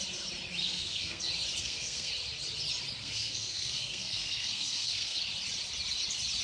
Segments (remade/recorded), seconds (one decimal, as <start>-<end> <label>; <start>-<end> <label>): 0.0-0.6 recorded; 0.6-1.2 remade; 1.2-1.6 recorded; 1.6-2.1 remade; 2.1-3.0 recorded; 3.0-5.2 remade; 5.2-6.4 recorded